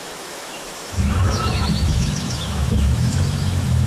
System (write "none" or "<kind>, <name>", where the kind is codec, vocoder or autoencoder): autoencoder, DAC-VAE